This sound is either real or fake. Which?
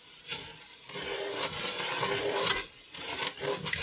real